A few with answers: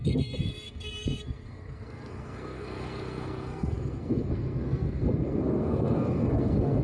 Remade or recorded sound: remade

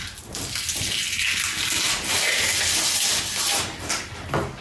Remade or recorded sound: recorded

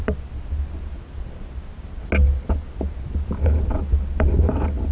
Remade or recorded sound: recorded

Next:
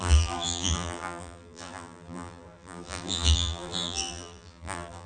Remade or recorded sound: remade